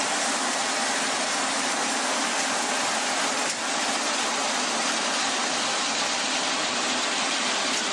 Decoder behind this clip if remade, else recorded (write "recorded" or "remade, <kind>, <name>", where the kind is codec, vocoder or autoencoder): recorded